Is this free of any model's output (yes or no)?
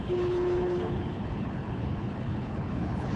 no